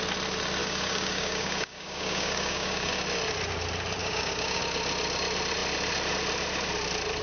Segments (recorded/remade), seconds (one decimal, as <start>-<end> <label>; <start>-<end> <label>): 0.0-0.6 recorded; 0.6-2.9 remade; 2.9-4.0 recorded; 4.0-4.6 remade; 4.6-7.2 recorded